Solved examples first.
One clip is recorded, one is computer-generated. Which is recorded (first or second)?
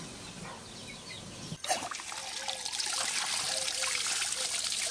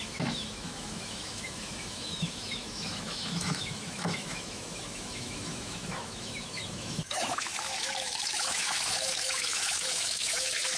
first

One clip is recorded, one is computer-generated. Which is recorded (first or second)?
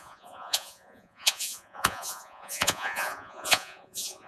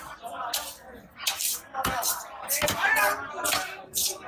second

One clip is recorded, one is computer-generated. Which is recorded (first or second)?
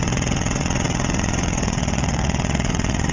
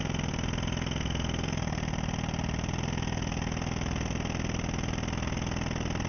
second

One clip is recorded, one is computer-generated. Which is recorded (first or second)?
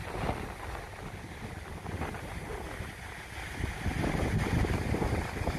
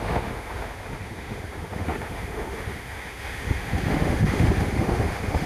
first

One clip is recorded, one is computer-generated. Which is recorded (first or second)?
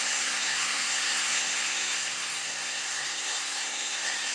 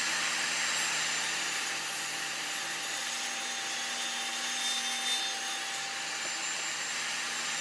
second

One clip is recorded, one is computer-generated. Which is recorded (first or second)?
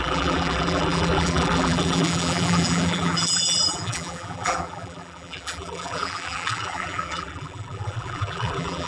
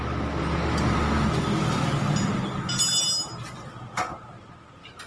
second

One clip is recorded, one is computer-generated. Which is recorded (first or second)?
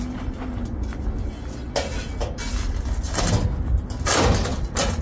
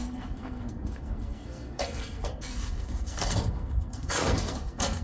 first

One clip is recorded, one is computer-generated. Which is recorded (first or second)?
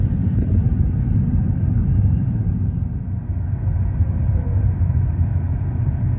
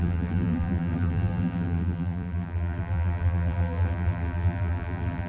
first